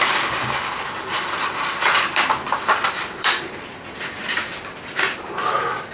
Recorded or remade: remade